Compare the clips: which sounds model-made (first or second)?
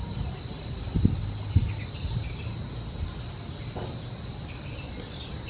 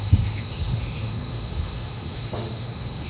second